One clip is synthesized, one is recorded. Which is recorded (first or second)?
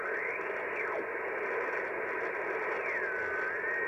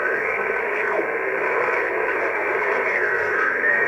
first